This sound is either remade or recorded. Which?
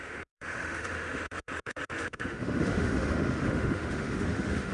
remade